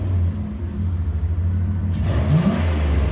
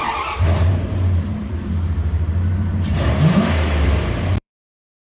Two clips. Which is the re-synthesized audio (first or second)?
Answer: second